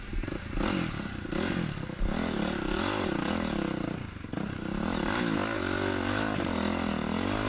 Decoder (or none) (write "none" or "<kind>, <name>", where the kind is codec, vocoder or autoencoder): none